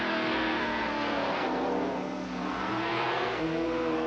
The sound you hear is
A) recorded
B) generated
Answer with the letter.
B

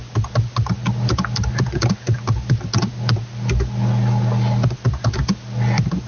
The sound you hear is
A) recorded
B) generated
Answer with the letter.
A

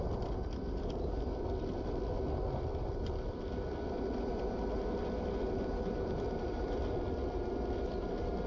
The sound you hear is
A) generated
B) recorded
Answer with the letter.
B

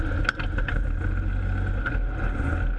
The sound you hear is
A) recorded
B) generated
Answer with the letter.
A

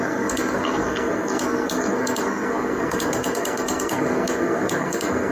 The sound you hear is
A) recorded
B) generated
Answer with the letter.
B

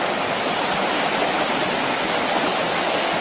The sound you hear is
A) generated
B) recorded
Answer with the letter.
B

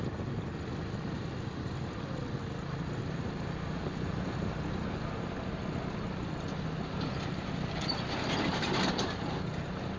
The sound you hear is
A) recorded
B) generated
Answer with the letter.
A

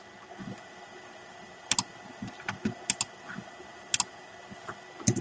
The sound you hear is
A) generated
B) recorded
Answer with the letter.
B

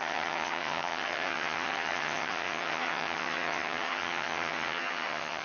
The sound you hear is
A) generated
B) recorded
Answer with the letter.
A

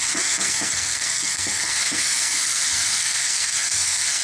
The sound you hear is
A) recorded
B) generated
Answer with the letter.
B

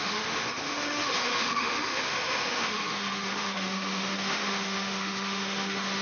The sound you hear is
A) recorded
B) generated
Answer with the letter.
B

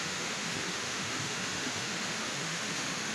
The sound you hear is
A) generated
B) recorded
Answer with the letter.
A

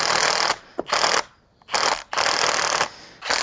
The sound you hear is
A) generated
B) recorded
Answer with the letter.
B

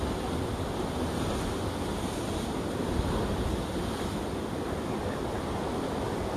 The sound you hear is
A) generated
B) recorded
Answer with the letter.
B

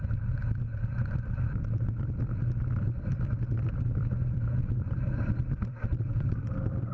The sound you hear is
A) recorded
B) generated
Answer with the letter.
B